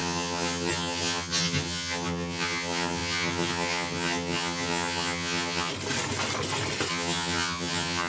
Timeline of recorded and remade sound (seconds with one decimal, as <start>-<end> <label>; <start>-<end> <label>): 0.0-5.7 remade; 5.7-6.9 recorded; 6.9-8.1 remade